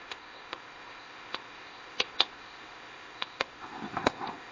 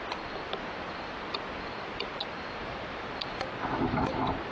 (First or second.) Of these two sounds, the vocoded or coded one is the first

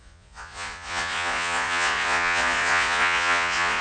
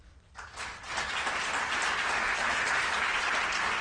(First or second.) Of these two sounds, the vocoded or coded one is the first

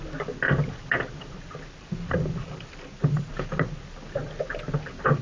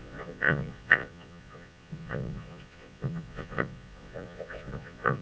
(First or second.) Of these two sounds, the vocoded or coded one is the second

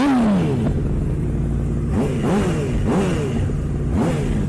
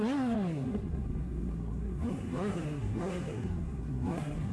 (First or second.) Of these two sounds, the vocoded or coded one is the second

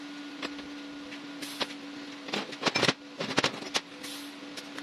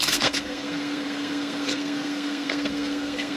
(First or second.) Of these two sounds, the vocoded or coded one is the second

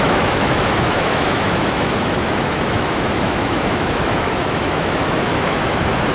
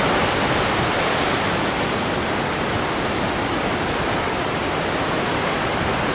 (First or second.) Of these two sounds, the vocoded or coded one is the first